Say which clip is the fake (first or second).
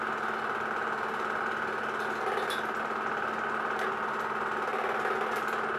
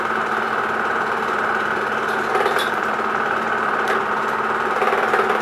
second